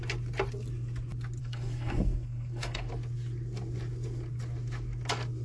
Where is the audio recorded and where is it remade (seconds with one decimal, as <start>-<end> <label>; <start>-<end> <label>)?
0.0-1.4 recorded; 1.4-2.9 remade; 2.9-5.4 recorded